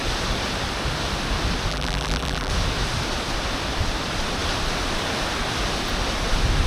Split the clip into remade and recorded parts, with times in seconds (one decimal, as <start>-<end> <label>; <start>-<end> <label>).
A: 0.0-1.7 recorded; 1.7-2.5 remade; 2.5-6.7 recorded